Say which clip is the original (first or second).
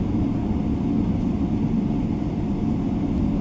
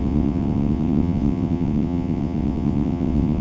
first